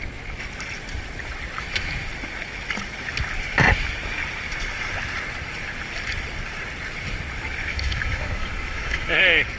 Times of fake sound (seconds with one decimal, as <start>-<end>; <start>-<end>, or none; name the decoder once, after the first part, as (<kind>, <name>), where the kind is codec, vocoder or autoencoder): 7.7-9.2 (autoencoder, DAC-VAE)